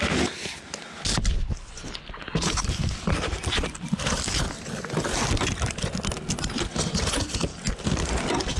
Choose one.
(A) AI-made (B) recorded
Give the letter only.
B